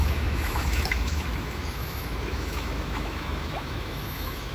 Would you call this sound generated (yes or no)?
yes